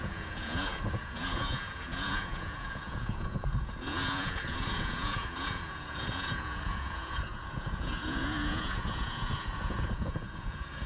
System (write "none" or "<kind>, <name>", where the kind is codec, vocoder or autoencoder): vocoder, Vocos